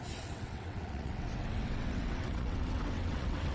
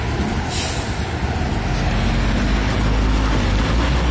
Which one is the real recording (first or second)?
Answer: second